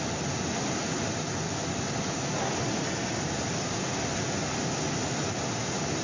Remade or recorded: recorded